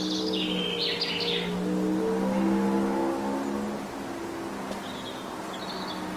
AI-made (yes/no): no